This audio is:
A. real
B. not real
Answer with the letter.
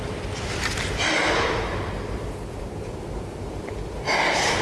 B